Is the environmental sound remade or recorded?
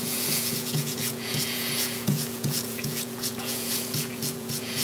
remade